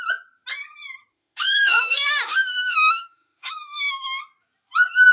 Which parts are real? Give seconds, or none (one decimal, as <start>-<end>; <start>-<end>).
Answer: 0.0-1.1; 4.2-5.1